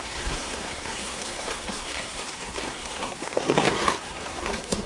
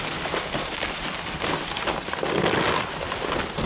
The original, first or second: second